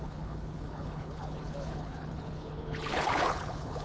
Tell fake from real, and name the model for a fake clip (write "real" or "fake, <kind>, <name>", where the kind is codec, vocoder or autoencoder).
fake, codec, HILCodec